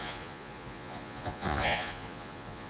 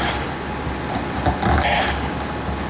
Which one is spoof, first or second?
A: first